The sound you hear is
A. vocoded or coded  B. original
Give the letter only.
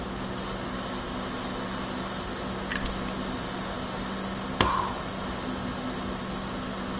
B